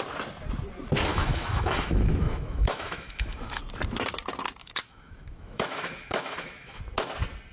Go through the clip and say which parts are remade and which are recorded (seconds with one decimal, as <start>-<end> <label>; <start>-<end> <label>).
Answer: 0.0-1.1 recorded; 1.1-3.6 remade; 3.6-4.6 recorded; 4.6-6.8 remade; 6.8-7.5 recorded